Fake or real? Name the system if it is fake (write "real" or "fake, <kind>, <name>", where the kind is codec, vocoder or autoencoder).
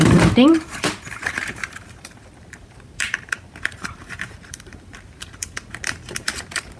fake, vocoder, BigVGAN v2